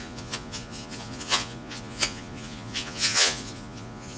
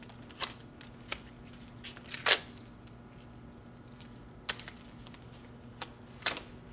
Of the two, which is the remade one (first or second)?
first